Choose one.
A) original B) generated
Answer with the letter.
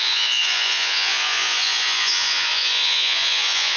B